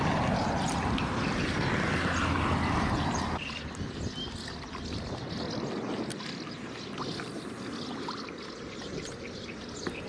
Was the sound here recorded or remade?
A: recorded